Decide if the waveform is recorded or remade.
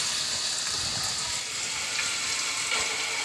recorded